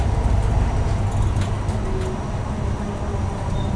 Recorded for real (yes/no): yes